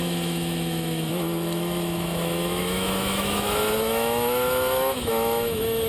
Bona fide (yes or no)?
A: no